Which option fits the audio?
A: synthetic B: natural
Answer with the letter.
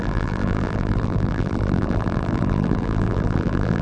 A